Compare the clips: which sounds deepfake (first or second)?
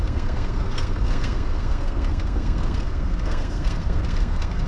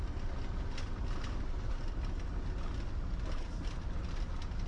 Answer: first